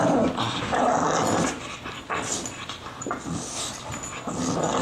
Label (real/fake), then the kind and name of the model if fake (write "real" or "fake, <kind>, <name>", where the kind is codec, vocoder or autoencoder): real